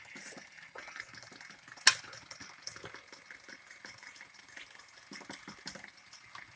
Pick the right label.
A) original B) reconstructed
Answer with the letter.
A